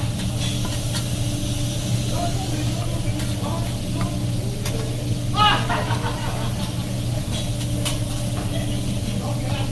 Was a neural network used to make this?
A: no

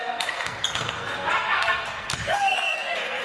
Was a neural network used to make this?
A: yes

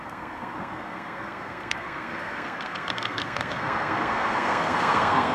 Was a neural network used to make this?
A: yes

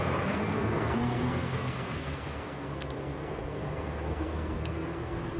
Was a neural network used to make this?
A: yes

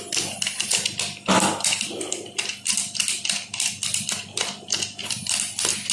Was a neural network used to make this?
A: no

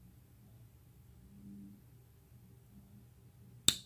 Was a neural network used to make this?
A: no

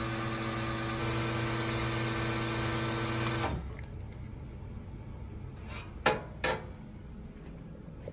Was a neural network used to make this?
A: no